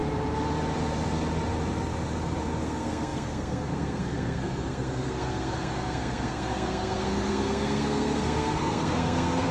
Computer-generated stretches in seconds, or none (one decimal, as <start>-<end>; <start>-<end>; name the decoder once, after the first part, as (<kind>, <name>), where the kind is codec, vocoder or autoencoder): 2.6-9.5 (codec, SNAC)

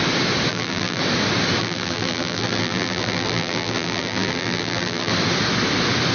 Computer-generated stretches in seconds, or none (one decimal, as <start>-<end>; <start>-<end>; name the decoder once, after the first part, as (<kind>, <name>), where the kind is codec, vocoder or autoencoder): 0.5-1.0 (vocoder, BigVGAN v2); 1.6-5.1

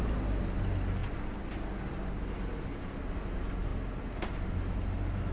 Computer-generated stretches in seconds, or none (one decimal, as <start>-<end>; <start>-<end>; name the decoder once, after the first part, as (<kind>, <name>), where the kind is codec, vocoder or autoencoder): none

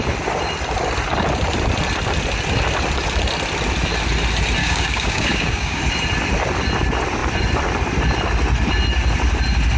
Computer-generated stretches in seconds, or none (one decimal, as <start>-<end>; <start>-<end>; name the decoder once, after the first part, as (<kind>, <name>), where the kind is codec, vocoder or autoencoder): 4.6-5.8 (codec, DAC)